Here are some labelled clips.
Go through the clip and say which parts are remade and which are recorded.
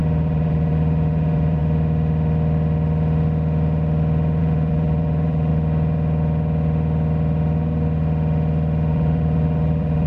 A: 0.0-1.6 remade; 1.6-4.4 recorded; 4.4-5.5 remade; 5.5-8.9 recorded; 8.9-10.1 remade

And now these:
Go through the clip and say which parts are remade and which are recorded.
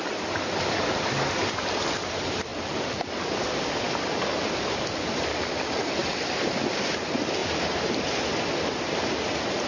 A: 0.0-2.5 recorded; 2.5-3.1 remade; 3.1-7.4 recorded; 7.4-8.1 remade; 8.1-9.7 recorded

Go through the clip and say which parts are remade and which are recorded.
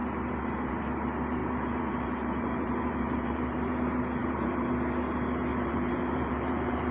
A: 0.0-1.4 recorded; 1.4-3.7 remade; 3.7-4.2 recorded; 4.2-4.7 remade; 4.7-5.5 recorded; 5.5-6.9 remade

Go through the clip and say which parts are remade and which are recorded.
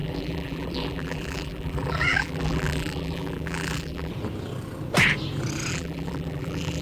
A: 0.0-4.1 remade; 4.1-5.7 recorded; 5.7-6.8 remade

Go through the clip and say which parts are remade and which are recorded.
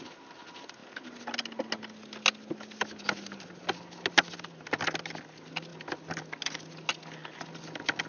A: 0.0-8.1 recorded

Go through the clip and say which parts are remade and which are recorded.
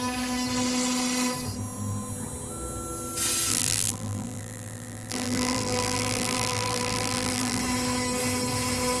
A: 0.0-3.5 recorded; 3.5-7.6 remade; 7.6-9.0 recorded